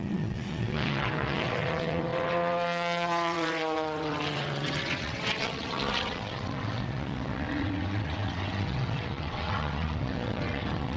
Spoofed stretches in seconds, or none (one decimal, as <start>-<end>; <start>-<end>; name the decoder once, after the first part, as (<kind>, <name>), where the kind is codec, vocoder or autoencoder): 0.0-11.0 (vocoder, WaveNeXt)